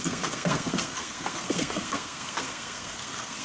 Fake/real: fake